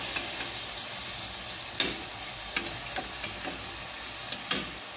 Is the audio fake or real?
real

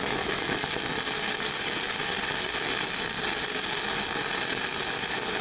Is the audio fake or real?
real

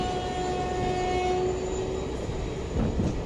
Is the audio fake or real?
real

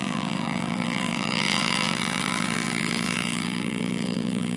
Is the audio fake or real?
fake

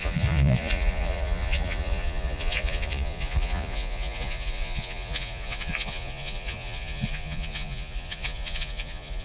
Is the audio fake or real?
fake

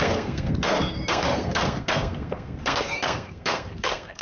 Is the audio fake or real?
fake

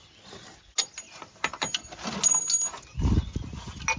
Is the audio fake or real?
real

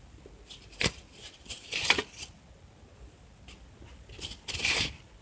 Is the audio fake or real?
real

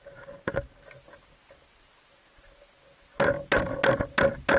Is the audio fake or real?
real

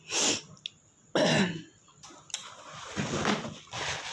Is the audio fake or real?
real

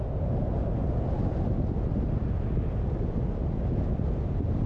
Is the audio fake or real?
real